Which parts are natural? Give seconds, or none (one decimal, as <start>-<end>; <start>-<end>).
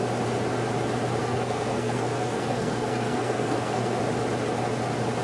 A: 0.0-1.2; 4.0-5.2